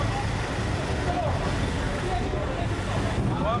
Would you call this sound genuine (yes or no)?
yes